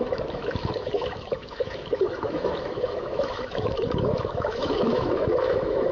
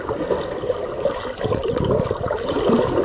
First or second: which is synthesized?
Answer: first